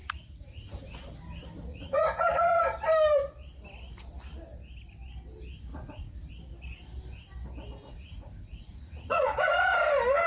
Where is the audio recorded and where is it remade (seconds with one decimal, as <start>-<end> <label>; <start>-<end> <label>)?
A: 0.0-0.8 remade; 0.8-1.7 recorded; 1.7-2.6 remade; 2.6-5.7 recorded; 5.7-6.3 remade; 6.3-7.9 recorded; 7.9-9.5 remade; 9.5-10.3 recorded

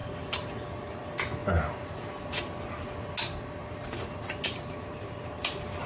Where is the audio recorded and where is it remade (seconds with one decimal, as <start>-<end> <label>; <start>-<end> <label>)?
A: 0.0-5.9 recorded

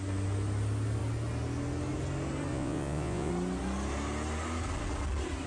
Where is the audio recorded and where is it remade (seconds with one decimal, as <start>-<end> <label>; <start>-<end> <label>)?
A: 0.0-2.5 recorded; 2.5-3.3 remade; 3.3-5.5 recorded

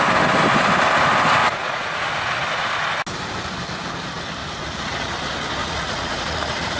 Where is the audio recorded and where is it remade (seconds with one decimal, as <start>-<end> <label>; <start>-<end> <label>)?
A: 0.0-1.4 recorded; 1.4-2.0 remade; 2.0-4.4 recorded; 4.4-5.1 remade; 5.1-5.6 recorded; 5.6-6.8 remade

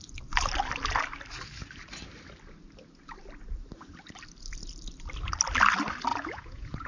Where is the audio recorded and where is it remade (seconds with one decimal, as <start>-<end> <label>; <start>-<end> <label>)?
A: 0.0-6.1 recorded; 6.1-6.9 remade

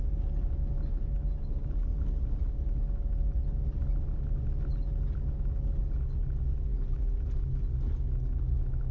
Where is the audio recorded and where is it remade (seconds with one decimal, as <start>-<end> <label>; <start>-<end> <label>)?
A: 0.0-8.9 recorded

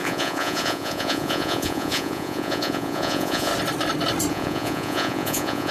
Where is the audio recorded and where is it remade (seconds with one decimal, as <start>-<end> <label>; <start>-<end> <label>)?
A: 0.0-3.5 remade; 3.5-4.3 recorded; 4.3-5.7 remade

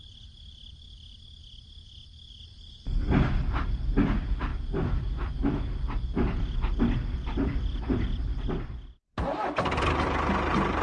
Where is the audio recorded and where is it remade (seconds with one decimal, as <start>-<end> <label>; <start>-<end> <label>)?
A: 0.0-10.8 recorded